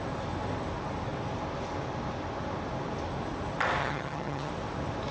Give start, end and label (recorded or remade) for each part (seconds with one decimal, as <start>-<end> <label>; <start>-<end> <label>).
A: 0.0-3.8 recorded; 3.8-4.5 remade; 4.5-5.1 recorded